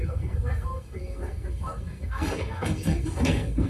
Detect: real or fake fake